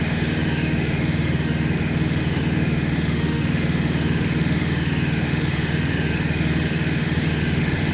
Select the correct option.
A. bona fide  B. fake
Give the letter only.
B